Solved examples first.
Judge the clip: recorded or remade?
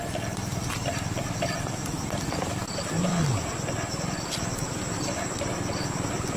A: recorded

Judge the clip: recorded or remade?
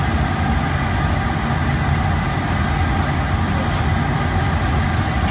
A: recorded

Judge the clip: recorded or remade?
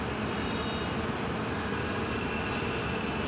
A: recorded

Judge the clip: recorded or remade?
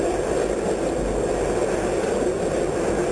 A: recorded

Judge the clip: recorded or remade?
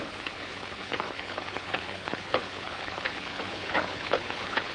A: remade